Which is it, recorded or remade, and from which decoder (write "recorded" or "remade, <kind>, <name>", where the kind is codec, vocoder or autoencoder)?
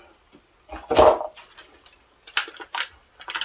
recorded